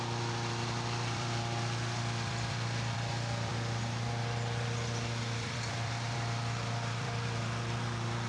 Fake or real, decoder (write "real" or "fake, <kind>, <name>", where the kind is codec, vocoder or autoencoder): fake, vocoder, BigVGAN v2